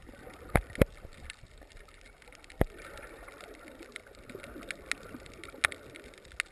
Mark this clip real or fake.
real